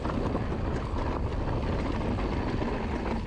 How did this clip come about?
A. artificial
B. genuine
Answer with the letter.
B